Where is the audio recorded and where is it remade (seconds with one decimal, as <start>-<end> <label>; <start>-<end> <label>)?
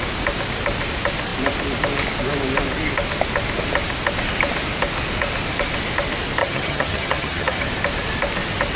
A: 0.0-6.4 recorded; 6.4-7.7 remade; 7.7-8.8 recorded